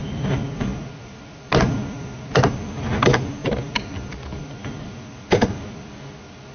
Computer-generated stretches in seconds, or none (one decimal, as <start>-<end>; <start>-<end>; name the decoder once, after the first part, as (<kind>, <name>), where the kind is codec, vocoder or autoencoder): none